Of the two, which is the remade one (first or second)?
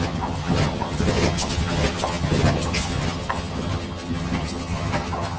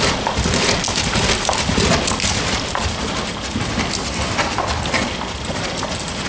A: first